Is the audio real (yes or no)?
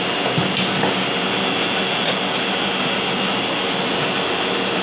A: yes